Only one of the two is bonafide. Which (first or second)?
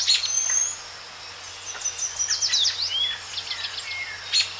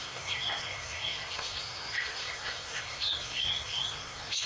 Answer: first